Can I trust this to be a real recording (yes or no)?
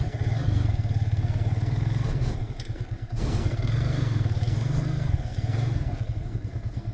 no